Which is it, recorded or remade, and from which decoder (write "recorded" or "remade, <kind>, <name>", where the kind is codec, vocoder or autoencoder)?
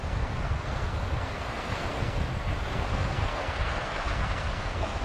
remade, codec, SNAC